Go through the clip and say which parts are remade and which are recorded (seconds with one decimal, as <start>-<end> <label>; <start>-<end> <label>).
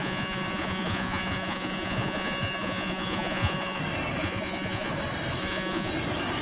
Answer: 0.0-3.8 remade; 3.8-4.2 recorded; 4.2-4.9 remade; 4.9-5.4 recorded; 5.4-5.9 remade; 5.9-6.4 recorded